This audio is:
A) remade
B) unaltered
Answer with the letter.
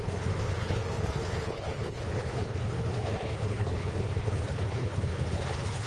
A